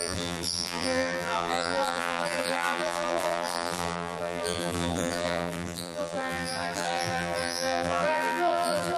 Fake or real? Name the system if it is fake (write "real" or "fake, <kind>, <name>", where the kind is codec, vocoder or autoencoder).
fake, vocoder, BigVGAN v2